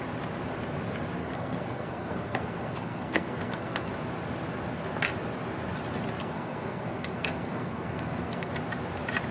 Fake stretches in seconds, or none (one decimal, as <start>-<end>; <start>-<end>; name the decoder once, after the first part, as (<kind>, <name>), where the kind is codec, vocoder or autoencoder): 1.2-3.9 (codec, SNAC); 6.2-8.5